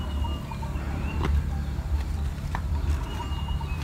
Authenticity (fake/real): fake